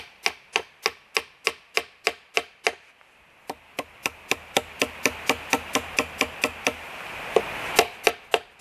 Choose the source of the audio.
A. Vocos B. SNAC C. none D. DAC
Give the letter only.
C